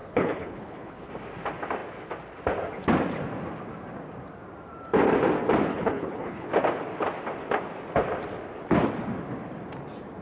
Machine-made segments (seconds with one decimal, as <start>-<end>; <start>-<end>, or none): 0.0-1.1; 5.7-6.5